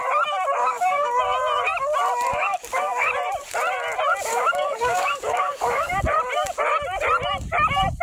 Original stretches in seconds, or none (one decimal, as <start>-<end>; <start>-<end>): 0.0-0.6; 1.2-2.3; 3.1-4.3; 6.0-8.0